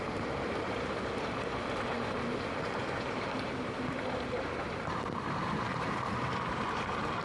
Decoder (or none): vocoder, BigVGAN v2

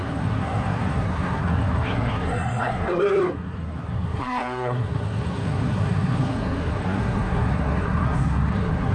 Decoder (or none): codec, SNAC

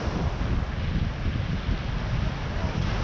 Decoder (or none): none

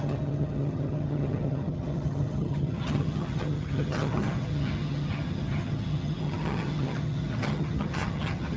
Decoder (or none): vocoder, HiFi-GAN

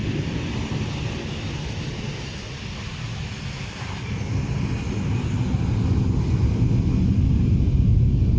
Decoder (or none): none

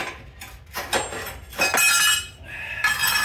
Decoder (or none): none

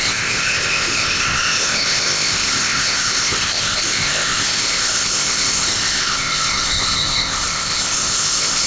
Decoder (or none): codec, ZipCodec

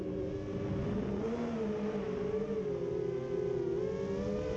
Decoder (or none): none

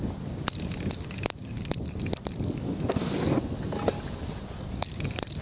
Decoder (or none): none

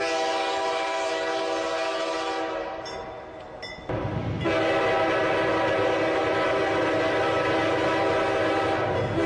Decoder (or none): none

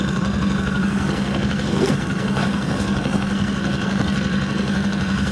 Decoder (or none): codec, SNAC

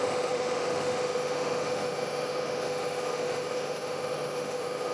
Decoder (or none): autoencoder, DAC-VAE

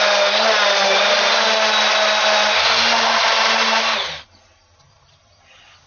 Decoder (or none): none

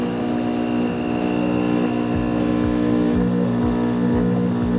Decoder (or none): none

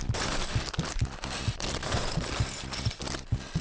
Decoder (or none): none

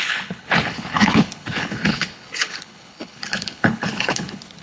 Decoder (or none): codec, HILCodec